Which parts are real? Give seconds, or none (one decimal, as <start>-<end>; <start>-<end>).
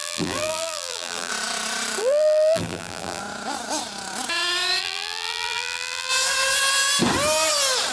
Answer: 1.3-2.0; 3.2-4.8; 6.1-7.9